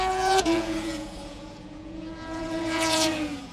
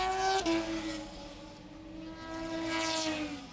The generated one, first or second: first